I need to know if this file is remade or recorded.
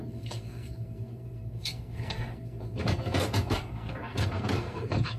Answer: remade